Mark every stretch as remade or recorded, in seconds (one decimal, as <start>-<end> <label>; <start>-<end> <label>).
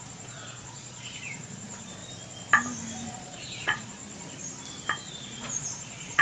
0.0-2.0 remade; 2.0-3.1 recorded; 3.1-4.0 remade; 4.0-5.1 recorded; 5.1-6.2 remade